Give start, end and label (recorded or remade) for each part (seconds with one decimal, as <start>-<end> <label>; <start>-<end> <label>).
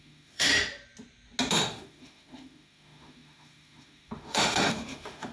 0.0-0.5 remade; 0.5-1.5 recorded; 1.5-5.3 remade